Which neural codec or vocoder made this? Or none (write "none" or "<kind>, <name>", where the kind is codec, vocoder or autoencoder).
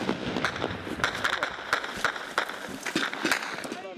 none